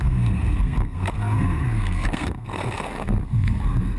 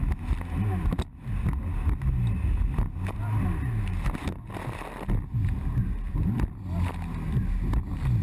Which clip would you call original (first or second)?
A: second